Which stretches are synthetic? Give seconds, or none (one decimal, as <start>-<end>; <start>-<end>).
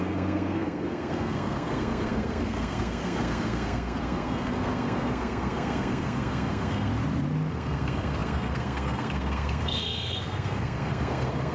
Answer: 0.0-6.9; 7.5-11.5